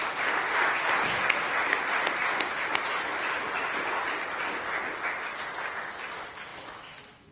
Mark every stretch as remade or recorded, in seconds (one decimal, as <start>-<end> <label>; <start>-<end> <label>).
0.0-6.5 recorded; 6.5-7.3 remade